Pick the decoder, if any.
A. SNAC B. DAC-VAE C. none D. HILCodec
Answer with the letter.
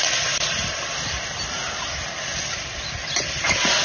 C